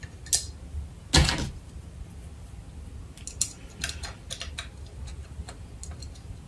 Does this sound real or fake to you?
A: real